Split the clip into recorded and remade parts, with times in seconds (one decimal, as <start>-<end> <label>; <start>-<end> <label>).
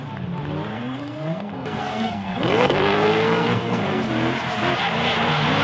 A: 0.0-0.7 recorded; 0.7-4.1 remade; 4.1-5.6 recorded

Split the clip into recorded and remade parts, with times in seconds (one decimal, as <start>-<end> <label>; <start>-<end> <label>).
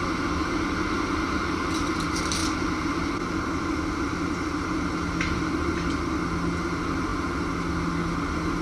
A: 0.0-8.6 recorded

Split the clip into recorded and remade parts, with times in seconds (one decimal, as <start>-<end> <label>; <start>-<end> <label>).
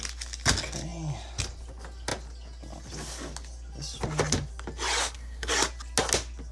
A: 0.0-5.0 recorded; 5.0-5.5 remade; 5.5-6.5 recorded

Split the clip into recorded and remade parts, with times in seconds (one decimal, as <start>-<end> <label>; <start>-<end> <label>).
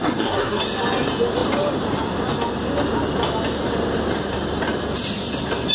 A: 0.0-0.6 remade; 0.6-5.7 recorded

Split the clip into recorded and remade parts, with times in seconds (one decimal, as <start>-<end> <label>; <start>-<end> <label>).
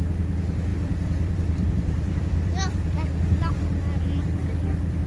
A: 0.0-0.7 recorded; 0.7-3.8 remade; 3.8-5.1 recorded